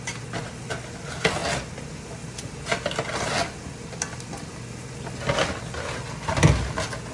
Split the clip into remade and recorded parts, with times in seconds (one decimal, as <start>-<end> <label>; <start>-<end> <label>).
0.0-7.1 recorded

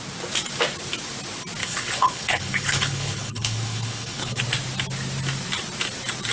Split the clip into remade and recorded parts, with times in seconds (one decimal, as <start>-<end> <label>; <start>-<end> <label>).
0.0-1.6 recorded; 1.6-4.4 remade; 4.4-6.3 recorded

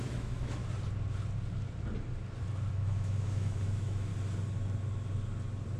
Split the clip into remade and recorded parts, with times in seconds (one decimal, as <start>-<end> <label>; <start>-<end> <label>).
0.0-0.6 remade; 0.6-2.7 recorded; 2.7-4.1 remade; 4.1-5.8 recorded